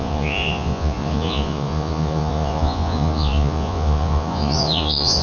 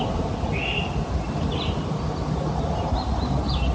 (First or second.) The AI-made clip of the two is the first